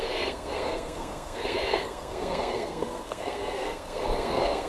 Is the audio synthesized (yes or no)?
yes